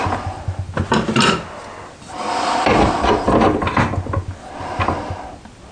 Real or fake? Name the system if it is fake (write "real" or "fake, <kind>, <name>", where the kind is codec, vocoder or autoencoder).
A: real